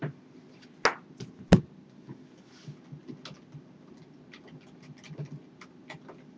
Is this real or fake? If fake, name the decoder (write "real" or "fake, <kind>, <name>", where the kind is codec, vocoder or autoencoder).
real